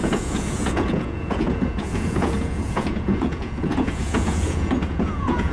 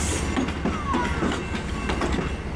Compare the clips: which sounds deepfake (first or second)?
first